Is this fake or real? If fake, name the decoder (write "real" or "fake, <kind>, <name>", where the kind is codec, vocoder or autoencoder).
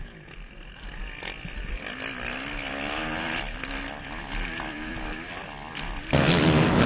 real